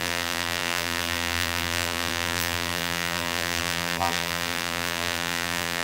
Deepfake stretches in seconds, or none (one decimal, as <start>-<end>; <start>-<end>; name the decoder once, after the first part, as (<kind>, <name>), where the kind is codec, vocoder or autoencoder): 0.0-5.8 (vocoder, BigVGAN v2)